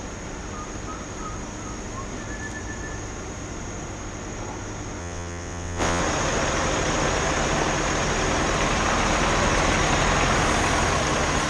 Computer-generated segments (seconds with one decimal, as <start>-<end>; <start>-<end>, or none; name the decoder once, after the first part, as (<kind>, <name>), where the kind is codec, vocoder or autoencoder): 5.0-6.0 (vocoder, WaveNeXt)